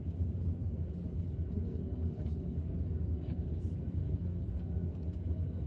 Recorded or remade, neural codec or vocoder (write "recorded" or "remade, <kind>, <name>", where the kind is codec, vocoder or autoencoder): remade, codec, SNAC